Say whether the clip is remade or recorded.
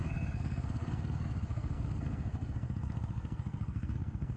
remade